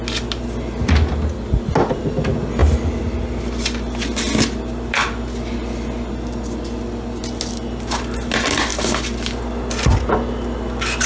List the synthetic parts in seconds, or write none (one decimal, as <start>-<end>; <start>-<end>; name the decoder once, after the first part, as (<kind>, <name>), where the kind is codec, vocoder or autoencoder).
none

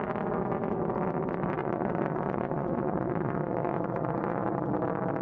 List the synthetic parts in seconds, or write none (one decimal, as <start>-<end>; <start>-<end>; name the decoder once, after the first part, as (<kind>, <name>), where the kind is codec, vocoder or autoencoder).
1.6-4.7 (vocoder, Vocos)

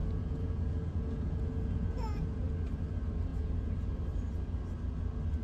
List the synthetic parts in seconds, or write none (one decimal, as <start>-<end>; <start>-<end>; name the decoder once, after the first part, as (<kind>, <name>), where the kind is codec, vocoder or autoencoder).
0.0-2.4 (vocoder, Vocos); 3.3-4.0

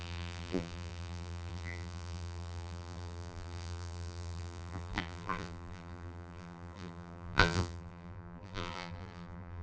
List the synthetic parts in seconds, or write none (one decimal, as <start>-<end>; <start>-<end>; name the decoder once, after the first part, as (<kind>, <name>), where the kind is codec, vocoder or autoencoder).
0.0-9.6 (vocoder, BigVGAN v2)

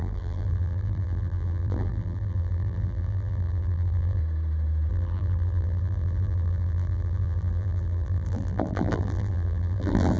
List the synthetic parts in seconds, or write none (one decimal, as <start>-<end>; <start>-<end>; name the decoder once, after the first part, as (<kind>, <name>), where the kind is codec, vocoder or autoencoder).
0.0-4.2 (vocoder, BigVGAN v2); 4.9-10.2

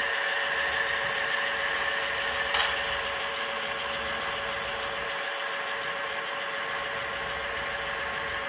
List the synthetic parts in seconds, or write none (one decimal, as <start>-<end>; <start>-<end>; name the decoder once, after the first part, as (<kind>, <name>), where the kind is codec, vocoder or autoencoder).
2.1-2.6 (vocoder, BigVGAN v2); 4.0-8.5

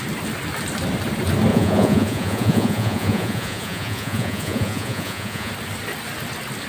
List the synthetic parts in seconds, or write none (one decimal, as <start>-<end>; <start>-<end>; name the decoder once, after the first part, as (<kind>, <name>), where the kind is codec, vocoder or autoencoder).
1.5-5.5 (vocoder, Vocos)

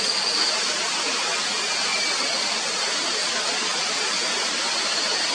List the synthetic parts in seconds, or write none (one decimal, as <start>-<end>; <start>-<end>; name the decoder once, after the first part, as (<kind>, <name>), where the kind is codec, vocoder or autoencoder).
3.2-4.1 (vocoder, Vocos)